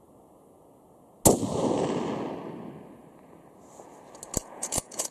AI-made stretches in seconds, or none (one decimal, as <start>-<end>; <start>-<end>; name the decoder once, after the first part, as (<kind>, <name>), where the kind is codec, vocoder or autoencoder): 4.4-5.1 (vocoder, Vocos)